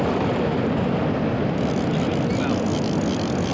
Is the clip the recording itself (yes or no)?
yes